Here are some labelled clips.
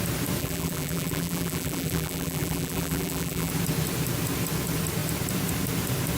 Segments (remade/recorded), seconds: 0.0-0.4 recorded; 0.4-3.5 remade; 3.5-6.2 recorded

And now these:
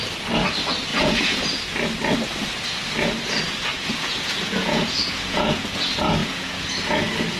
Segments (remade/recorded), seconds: 0.0-0.9 recorded; 0.9-1.4 remade; 1.4-3.7 recorded; 3.7-5.8 remade; 5.8-6.2 recorded; 6.2-6.8 remade; 6.8-7.4 recorded

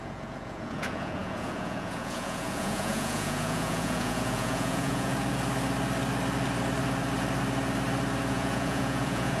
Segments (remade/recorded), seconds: 0.0-5.1 remade; 5.1-8.3 recorded; 8.3-9.4 remade

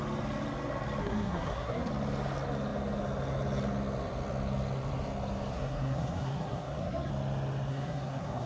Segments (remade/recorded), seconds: 0.0-1.0 recorded; 1.0-1.9 remade; 1.9-5.5 recorded; 5.5-7.1 remade; 7.1-7.7 recorded; 7.7-8.5 remade

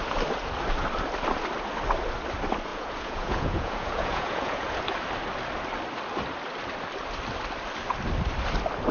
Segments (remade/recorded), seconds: 0.0-2.7 recorded; 2.7-4.8 remade; 4.8-8.9 recorded

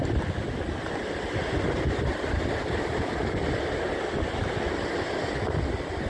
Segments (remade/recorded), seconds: 0.0-6.1 recorded

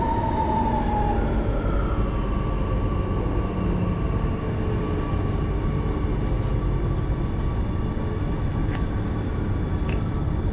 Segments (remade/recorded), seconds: 0.0-8.6 recorded; 8.6-9.6 remade; 9.6-10.5 recorded